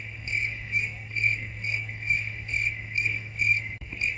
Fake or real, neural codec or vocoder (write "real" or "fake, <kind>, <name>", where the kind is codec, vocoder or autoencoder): fake, codec, SNAC